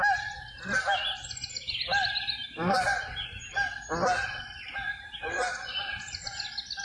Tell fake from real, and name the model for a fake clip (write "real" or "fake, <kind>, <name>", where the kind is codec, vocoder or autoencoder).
real